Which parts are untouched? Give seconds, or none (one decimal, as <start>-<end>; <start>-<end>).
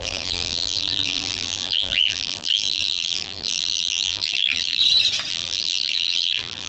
4.8-5.3